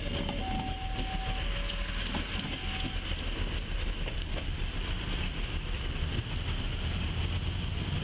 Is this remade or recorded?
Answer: recorded